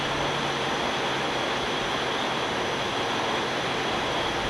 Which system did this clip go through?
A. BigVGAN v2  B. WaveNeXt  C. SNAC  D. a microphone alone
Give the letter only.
D